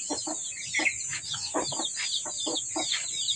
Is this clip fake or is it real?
real